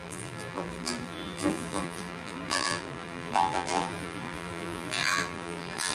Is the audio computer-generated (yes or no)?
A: yes